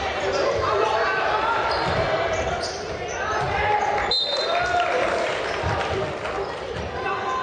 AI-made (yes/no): no